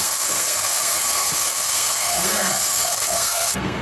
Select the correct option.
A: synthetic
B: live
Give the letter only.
A